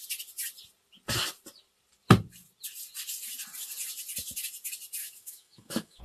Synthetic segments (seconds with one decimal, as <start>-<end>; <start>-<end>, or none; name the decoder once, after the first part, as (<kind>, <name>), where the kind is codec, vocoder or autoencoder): 5.0-6.0 (autoencoder, DAC-VAE)